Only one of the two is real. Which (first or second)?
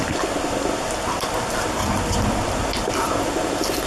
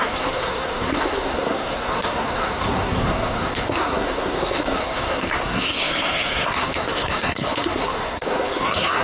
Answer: first